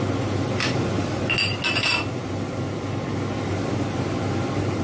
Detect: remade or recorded recorded